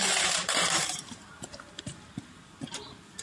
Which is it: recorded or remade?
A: remade